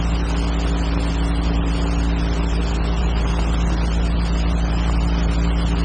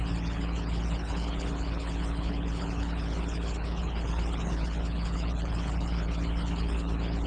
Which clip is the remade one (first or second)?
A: second